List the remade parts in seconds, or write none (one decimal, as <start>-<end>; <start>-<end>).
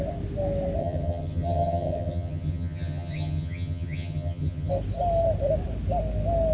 0.8-4.7